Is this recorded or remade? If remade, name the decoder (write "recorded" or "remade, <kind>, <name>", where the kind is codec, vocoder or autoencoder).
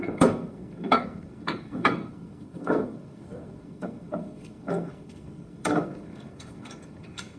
remade, codec, SNAC